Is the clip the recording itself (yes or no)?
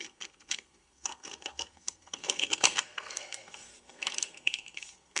no